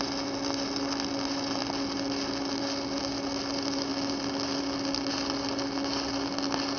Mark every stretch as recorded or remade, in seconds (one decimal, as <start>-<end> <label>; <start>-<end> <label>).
0.0-6.8 recorded